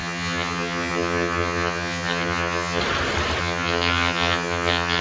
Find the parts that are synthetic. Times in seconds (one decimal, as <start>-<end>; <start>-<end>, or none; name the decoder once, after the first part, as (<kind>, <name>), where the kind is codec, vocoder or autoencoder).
0.0-2.8 (vocoder, HiFi-GAN); 3.4-5.0